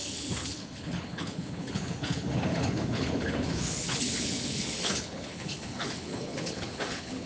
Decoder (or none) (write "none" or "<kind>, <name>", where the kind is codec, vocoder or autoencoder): codec, HILCodec